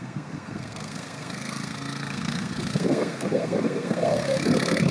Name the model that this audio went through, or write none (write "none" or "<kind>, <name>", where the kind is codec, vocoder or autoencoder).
codec, SNAC